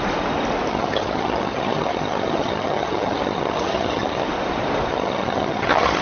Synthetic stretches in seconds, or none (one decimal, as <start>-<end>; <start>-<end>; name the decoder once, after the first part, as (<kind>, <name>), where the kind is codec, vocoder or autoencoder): 0.7-4.3 (vocoder, HiFi-GAN); 4.9-6.0